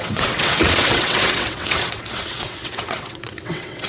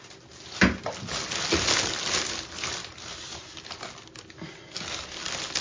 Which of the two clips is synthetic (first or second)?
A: first